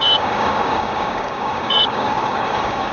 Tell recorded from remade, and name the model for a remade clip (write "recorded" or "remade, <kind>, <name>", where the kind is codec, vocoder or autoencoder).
remade, codec, DAC